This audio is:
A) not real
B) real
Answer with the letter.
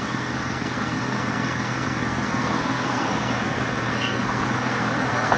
A